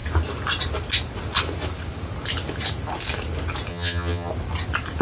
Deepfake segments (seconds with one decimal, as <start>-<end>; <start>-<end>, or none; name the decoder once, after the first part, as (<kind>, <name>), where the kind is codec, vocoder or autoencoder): 3.7-4.3 (vocoder, HiFi-GAN)